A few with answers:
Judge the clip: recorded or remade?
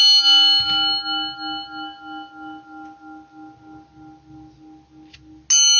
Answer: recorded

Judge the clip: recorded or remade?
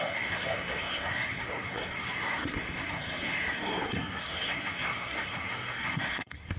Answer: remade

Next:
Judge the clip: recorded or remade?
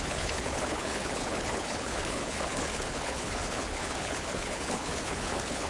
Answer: remade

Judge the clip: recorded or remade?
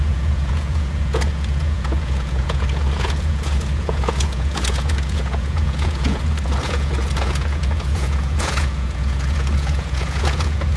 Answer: remade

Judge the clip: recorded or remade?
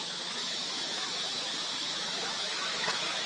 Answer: remade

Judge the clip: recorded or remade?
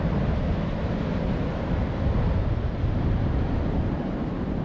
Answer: recorded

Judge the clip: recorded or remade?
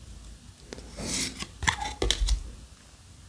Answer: recorded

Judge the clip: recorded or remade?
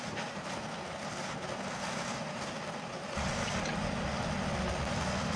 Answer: recorded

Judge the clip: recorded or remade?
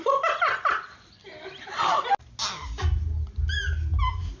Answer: recorded